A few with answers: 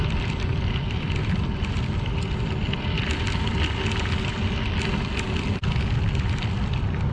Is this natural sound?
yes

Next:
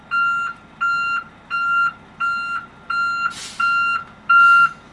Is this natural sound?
yes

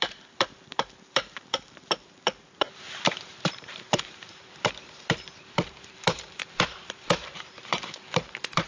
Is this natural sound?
no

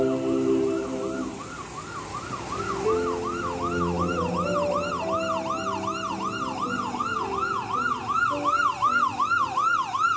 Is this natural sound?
yes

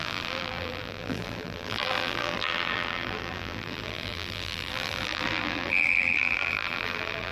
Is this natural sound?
no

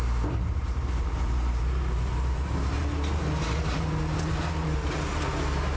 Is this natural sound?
no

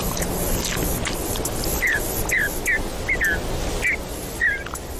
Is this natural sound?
yes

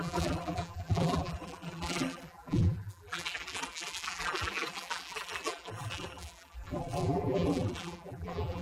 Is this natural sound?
no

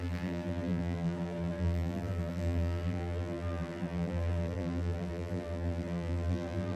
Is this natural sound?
no